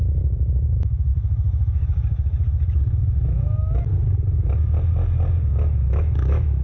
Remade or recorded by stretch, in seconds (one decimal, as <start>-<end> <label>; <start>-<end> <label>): 0.0-3.9 remade; 3.9-5.4 recorded; 5.4-6.6 remade